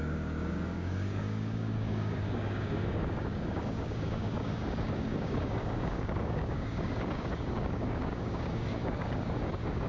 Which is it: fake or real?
fake